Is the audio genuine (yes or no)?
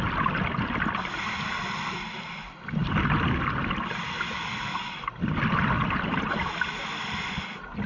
yes